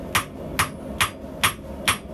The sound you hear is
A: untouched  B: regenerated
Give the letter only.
A